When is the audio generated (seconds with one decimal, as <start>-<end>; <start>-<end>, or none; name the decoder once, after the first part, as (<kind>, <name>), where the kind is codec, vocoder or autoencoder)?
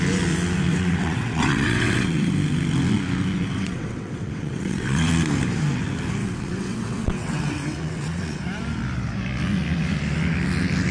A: 0.7-2.3 (vocoder, WaveNeXt); 3.5-5.1; 6.2-8.4